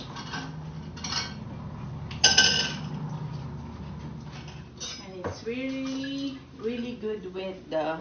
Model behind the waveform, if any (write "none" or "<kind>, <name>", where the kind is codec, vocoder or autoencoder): none